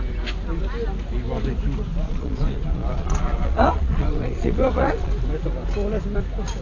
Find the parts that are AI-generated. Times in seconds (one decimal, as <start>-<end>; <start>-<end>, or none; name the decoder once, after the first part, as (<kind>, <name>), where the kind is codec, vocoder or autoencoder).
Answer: 1.9-5.1 (vocoder, Vocos)